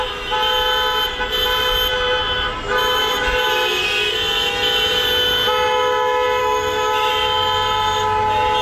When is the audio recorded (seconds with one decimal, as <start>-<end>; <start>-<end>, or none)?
0.0-6.4; 7.1-8.6